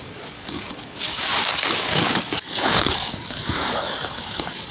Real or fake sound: fake